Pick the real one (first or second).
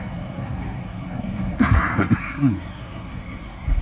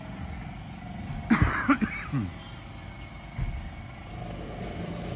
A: second